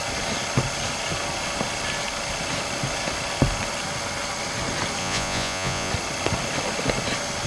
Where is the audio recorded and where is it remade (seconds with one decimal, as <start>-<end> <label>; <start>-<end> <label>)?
0.0-5.0 recorded; 5.0-5.9 remade; 5.9-7.5 recorded